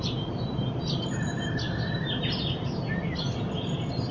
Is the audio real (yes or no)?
yes